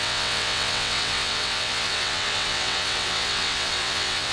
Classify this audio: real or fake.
fake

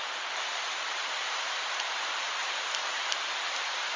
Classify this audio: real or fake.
fake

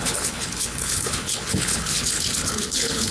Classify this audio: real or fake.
fake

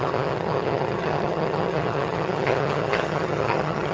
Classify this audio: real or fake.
fake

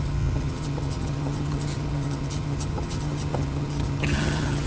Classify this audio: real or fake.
fake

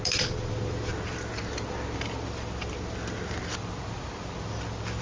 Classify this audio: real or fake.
real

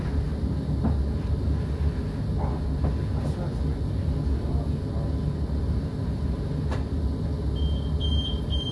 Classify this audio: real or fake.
real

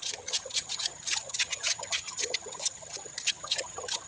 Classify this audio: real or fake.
fake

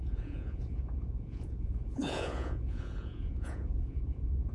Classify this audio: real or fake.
fake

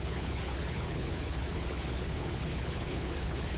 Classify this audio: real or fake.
fake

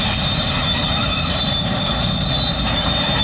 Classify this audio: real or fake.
real